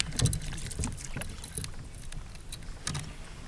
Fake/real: real